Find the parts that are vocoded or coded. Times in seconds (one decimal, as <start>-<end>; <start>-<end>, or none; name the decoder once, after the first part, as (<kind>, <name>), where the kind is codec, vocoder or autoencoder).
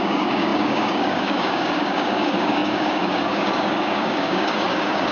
0.0-5.1 (codec, DAC)